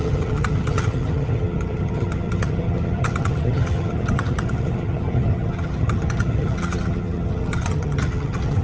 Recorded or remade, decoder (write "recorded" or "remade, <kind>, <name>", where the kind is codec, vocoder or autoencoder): remade, vocoder, HiFi-GAN